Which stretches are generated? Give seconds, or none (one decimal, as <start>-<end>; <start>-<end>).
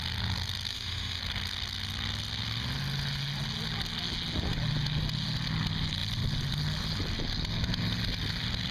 0.7-1.2